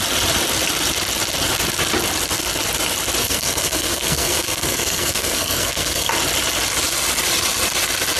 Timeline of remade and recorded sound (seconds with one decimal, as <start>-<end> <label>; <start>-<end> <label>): 0.0-3.2 recorded; 3.2-6.1 remade; 6.1-8.2 recorded